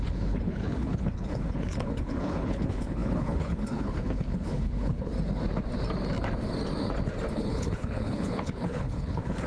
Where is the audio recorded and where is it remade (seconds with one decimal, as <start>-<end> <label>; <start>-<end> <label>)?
0.0-5.1 remade; 5.1-7.3 recorded; 7.3-9.5 remade